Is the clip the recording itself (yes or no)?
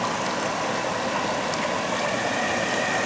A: yes